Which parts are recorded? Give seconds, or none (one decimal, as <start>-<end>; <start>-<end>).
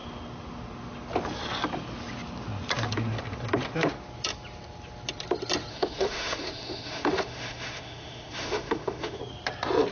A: 0.0-5.7; 9.2-9.9